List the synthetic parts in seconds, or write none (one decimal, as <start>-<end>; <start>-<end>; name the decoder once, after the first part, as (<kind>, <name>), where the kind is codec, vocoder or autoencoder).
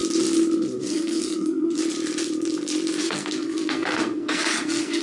0.8-1.8 (codec, SNAC); 3.0-5.0